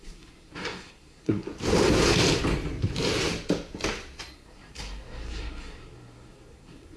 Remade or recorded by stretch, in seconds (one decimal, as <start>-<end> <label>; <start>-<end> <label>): 0.0-1.5 remade; 1.5-4.3 recorded; 4.3-7.0 remade